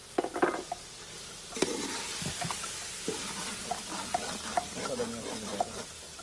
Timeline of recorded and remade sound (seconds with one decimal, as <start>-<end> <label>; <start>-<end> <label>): 0.0-6.2 recorded